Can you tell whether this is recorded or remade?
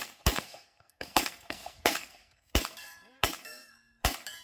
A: remade